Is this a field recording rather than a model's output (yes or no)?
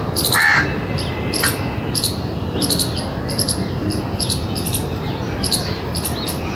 yes